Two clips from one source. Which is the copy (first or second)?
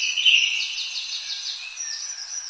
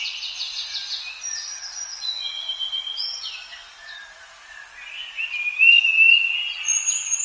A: first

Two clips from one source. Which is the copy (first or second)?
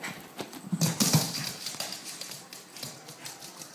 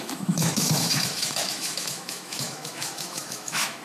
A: second